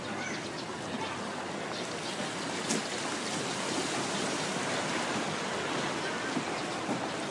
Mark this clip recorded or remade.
recorded